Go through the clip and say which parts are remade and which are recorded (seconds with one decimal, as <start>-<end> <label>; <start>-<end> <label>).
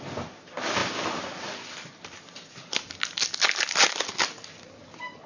0.0-5.3 recorded